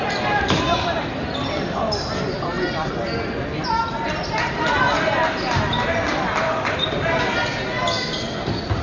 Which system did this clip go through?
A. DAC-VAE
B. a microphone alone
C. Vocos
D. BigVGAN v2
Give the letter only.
B